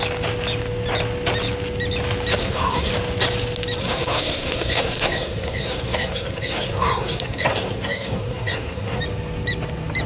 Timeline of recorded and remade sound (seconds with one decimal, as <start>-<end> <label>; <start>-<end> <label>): 0.0-2.4 recorded; 2.4-2.9 remade; 2.9-3.8 recorded; 3.8-9.0 remade; 9.0-10.1 recorded